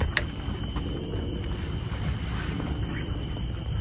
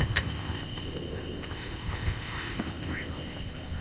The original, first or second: first